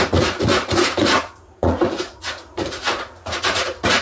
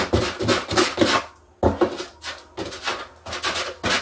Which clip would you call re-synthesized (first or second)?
first